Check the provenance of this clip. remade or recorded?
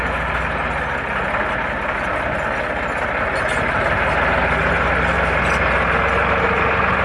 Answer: recorded